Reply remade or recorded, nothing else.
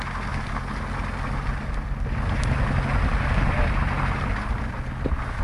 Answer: recorded